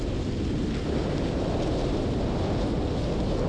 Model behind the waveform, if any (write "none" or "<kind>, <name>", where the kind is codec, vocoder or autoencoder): none